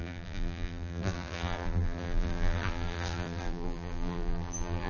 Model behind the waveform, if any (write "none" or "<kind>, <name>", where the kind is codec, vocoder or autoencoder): vocoder, BigVGAN v2